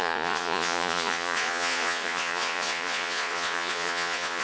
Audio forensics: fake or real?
fake